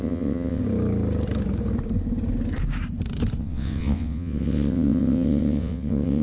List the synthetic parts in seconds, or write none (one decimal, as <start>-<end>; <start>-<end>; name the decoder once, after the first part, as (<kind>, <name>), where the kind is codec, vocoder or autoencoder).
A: 0.0-0.6 (vocoder, WaveNeXt); 3.4-6.2